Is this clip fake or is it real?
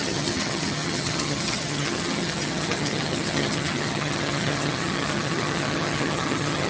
fake